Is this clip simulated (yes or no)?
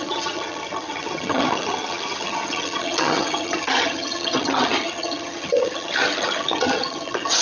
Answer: yes